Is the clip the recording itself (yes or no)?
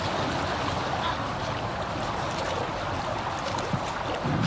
yes